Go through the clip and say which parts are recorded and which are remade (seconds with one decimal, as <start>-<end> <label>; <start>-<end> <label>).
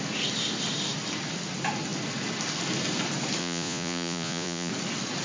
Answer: 0.0-3.4 recorded; 3.4-4.7 remade; 4.7-5.2 recorded